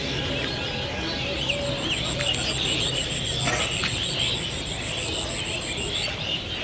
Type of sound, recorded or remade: recorded